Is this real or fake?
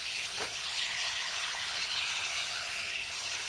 fake